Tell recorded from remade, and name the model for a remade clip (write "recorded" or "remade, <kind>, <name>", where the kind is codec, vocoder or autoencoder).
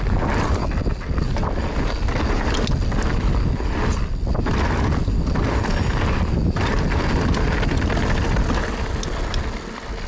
recorded